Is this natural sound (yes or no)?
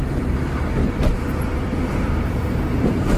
no